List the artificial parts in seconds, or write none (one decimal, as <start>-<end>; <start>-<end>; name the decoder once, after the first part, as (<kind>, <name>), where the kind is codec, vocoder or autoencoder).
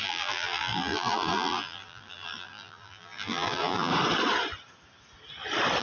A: 0.0-3.9 (vocoder, BigVGAN v2)